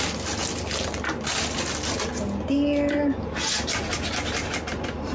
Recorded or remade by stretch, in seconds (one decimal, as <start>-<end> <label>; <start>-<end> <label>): 0.0-5.1 recorded